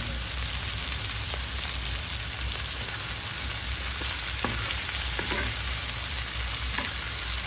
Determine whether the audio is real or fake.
real